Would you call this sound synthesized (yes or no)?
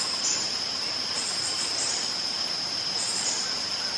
yes